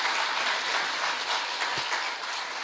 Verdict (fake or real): real